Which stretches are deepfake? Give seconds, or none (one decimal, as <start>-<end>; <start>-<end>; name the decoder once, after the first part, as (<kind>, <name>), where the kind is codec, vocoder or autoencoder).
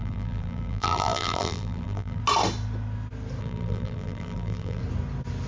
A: 0.0-2.2 (vocoder, BigVGAN v2); 3.4-4.8